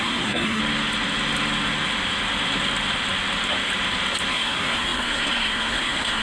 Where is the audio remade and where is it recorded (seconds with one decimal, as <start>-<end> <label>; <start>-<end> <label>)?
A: 0.0-0.6 remade; 0.6-4.3 recorded; 4.3-6.2 remade